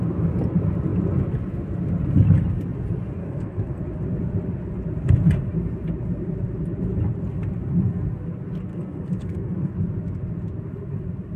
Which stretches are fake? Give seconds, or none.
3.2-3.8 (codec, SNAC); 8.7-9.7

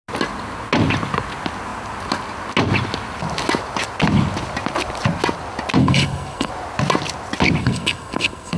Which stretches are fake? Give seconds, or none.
5.8-6.5 (codec, SNAC); 7.6-8.6

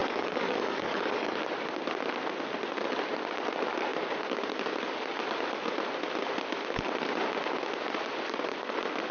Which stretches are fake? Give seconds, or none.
0.0-1.4 (codec, DAC)

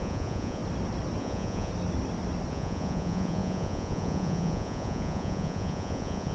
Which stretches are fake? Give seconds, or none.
0.0-0.6 (vocoder, Vocos); 1.2-1.7; 2.5-6.3

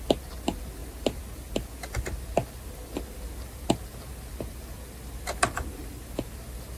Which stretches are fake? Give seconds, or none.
none

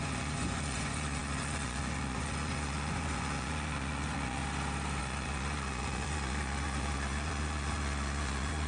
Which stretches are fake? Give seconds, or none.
0.0-4.4 (vocoder, Vocos); 5.0-8.7

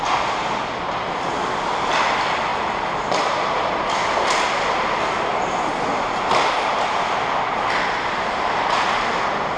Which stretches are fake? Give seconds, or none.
none